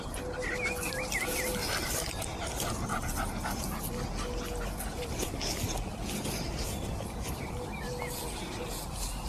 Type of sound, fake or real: real